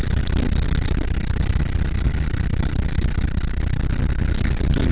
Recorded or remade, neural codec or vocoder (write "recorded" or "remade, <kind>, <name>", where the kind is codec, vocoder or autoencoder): recorded